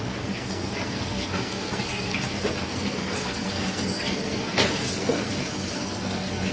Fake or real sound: fake